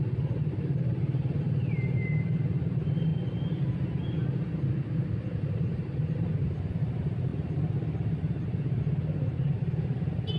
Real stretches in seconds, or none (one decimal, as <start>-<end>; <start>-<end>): 3.1-5.4